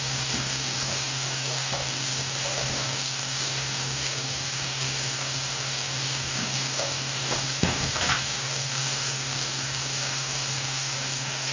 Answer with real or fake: fake